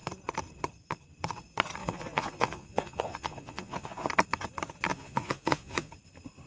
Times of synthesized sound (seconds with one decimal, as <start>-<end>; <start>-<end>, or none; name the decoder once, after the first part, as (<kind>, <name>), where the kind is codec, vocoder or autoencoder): 1.8-4.1 (vocoder, Vocos); 4.9-5.9